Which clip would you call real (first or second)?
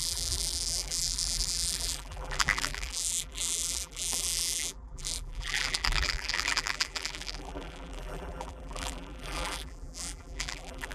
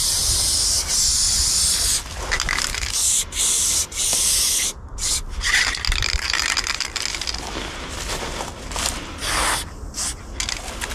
second